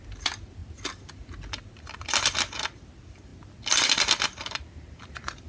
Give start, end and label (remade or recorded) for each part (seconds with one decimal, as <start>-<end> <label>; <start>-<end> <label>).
0.0-5.5 recorded